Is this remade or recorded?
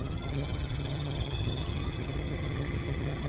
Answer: remade